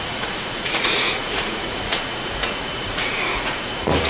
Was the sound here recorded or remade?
remade